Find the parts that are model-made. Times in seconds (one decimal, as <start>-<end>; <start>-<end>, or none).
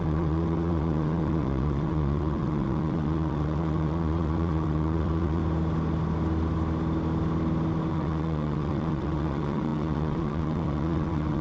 0.0-5.4; 7.9-11.4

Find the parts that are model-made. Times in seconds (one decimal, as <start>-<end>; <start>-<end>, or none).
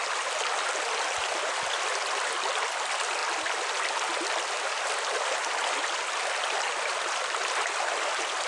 none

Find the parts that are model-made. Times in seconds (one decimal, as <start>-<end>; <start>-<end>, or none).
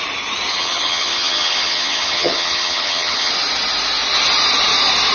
0.5-3.3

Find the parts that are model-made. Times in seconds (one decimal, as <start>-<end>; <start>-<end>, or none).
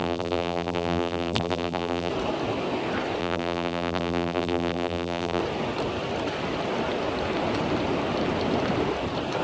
0.0-2.1; 3.2-5.4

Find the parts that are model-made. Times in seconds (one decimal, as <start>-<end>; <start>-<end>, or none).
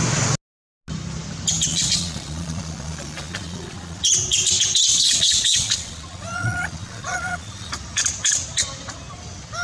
1.7-4.0; 4.9-7.7